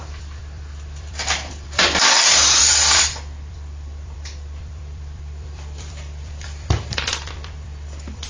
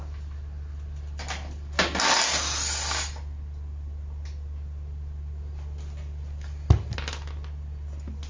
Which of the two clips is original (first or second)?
second